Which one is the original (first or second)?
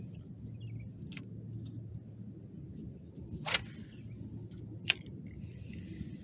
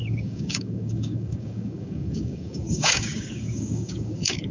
first